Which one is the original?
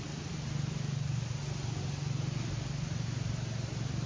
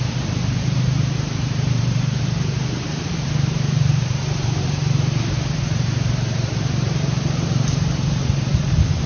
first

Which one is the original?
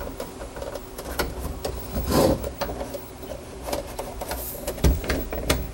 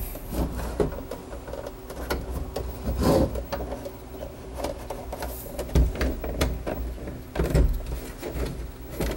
second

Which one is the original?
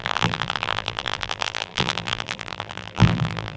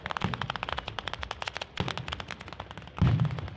second